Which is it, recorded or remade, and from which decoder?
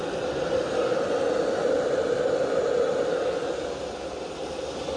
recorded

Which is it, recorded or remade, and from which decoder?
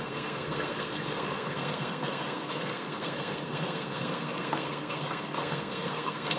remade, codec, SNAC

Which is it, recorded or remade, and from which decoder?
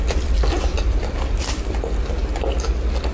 recorded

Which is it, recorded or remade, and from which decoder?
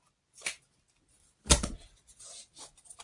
recorded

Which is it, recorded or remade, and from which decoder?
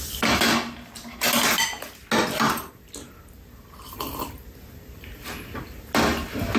recorded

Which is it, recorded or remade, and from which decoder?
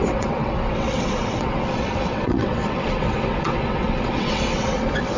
remade, vocoder, WaveNeXt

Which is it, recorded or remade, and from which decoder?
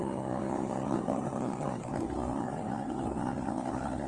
remade, codec, SNAC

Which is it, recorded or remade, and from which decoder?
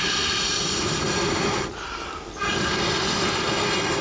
recorded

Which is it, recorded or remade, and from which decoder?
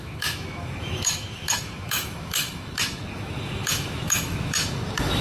remade, autoencoder, DAC-VAE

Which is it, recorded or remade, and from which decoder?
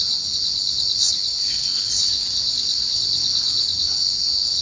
recorded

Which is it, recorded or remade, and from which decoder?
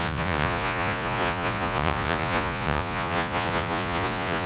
remade, vocoder, Vocos